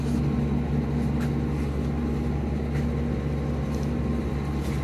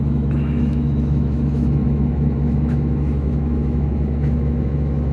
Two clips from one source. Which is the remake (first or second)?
second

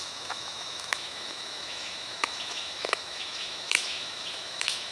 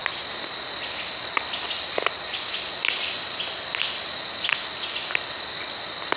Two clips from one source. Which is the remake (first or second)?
first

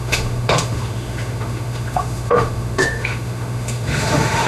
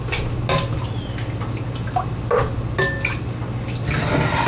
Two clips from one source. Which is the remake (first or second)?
first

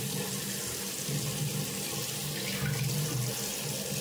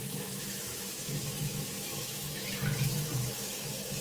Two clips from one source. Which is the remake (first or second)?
second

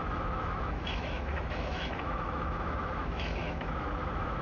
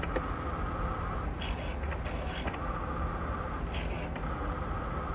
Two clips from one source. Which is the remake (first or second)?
first